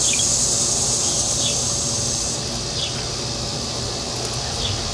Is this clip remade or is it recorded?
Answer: recorded